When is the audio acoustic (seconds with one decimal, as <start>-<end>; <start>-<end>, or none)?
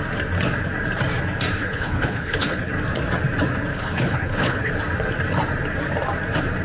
0.0-1.6; 2.7-3.7; 4.7-6.6